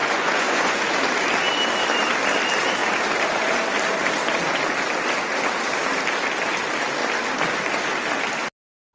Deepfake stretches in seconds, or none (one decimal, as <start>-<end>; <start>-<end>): 0.0-0.8